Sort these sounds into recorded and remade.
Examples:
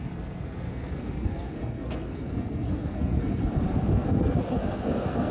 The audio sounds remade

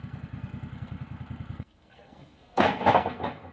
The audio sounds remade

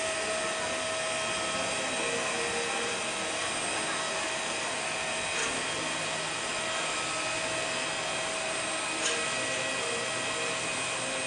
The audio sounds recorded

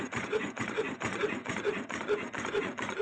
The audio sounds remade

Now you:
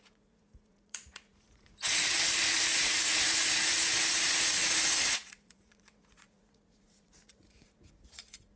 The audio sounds remade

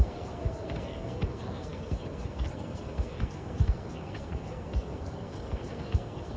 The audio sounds remade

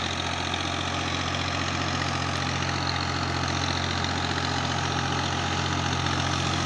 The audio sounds recorded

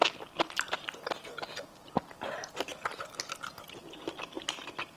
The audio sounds recorded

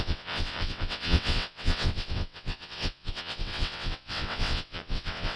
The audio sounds remade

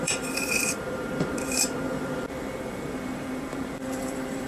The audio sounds remade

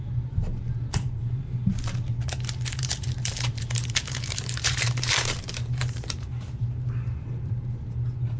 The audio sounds remade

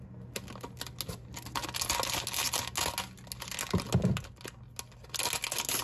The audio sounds recorded